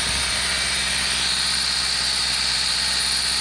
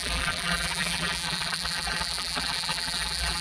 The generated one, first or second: second